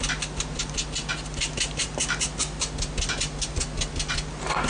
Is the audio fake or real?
real